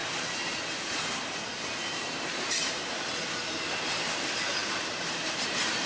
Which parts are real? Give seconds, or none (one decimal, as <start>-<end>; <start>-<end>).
3.1-4.6